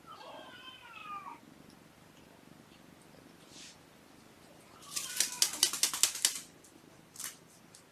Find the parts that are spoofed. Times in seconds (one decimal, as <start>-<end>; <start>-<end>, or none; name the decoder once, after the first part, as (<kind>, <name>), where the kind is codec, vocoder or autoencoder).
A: none